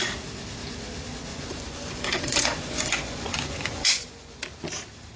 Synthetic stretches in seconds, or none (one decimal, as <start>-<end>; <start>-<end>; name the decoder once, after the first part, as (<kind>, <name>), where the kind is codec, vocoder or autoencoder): 1.3-4.4 (vocoder, Vocos)